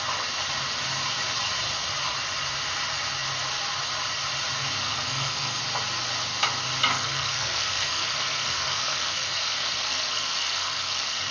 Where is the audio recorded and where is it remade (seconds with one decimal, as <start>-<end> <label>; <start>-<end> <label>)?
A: 0.0-4.8 recorded; 4.8-5.6 remade; 5.6-6.9 recorded; 6.9-11.3 remade